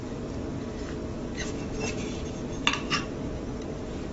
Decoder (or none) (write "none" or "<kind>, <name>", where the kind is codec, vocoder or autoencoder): none